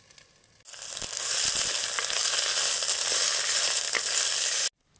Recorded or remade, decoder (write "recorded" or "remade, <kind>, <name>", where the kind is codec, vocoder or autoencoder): recorded